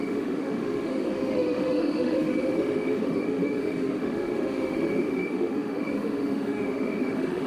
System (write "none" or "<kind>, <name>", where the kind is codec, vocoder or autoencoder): autoencoder, DAC-VAE